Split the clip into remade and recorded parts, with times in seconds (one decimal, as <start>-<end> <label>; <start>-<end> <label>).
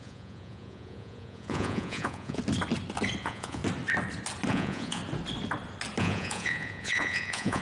0.0-2.4 remade; 2.4-3.2 recorded; 3.2-3.6 remade; 3.6-4.5 recorded; 4.5-5.0 remade; 5.0-6.0 recorded; 6.0-7.6 remade